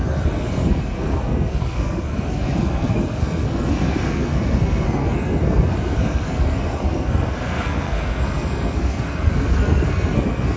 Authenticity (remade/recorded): remade